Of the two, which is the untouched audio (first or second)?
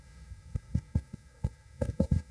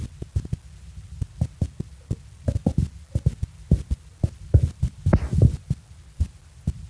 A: second